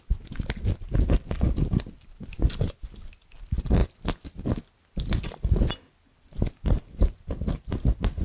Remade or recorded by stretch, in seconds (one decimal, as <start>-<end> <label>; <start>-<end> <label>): 0.0-8.2 recorded